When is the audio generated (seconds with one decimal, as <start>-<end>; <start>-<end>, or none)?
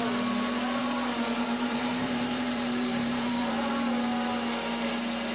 0.8-3.7